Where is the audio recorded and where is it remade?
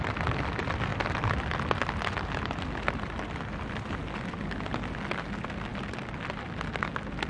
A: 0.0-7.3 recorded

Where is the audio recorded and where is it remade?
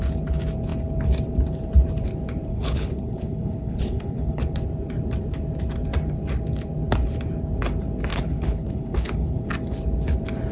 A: 0.0-2.5 recorded; 2.5-4.4 remade; 4.4-8.1 recorded; 8.1-9.5 remade; 9.5-10.5 recorded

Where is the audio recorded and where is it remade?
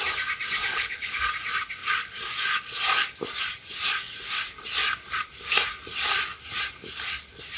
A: 0.0-0.7 recorded; 0.7-1.2 remade; 1.2-7.6 recorded